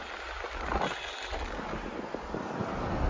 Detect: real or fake real